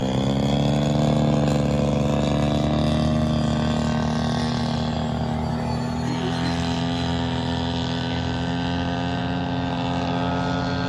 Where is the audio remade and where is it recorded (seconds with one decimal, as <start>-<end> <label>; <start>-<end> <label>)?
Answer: 0.0-10.9 recorded